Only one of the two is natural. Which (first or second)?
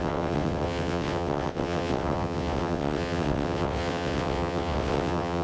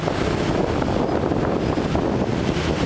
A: second